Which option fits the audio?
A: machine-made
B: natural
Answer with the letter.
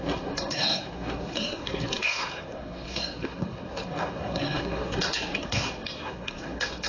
A